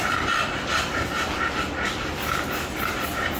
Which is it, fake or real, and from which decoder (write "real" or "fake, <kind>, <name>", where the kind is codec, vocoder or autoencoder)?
real